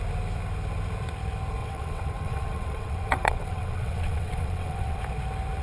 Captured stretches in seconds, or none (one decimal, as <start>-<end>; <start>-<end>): 0.0-1.6; 5.0-5.6